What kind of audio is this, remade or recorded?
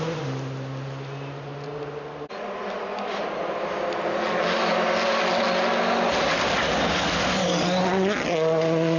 recorded